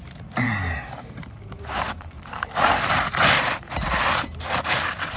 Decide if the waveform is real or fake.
fake